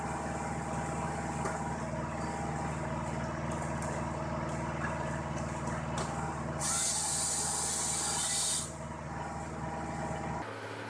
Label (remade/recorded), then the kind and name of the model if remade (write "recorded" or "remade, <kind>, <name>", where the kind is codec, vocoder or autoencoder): recorded